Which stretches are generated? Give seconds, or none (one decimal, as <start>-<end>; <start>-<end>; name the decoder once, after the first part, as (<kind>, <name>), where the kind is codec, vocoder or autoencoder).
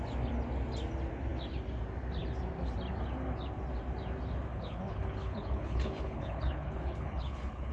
4.5-7.7 (codec, HILCodec)